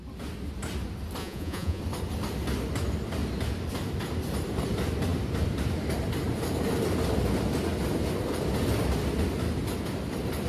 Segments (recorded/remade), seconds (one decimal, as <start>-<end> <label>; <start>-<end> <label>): 0.0-1.2 recorded; 1.2-1.8 remade; 1.8-10.5 recorded